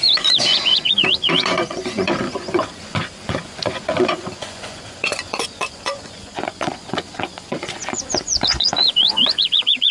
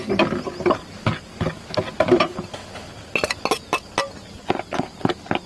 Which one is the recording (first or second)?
second